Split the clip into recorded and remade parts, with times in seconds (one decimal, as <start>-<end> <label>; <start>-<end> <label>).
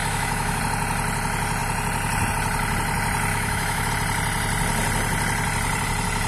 0.0-0.6 remade; 0.6-3.3 recorded; 3.3-3.9 remade; 3.9-6.3 recorded